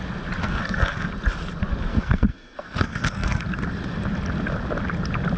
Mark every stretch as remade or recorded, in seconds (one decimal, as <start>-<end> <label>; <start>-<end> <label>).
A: 0.0-0.4 recorded; 0.4-1.1 remade; 1.1-1.9 recorded; 1.9-3.4 remade; 3.4-5.4 recorded